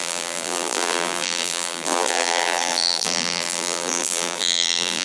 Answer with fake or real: fake